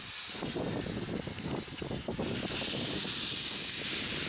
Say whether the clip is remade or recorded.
recorded